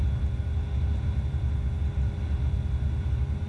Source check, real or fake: real